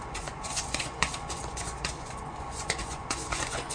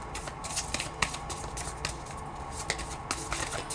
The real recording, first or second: second